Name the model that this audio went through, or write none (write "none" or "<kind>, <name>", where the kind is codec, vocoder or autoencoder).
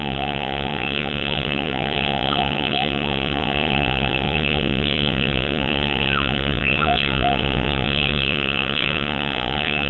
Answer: vocoder, WaveNeXt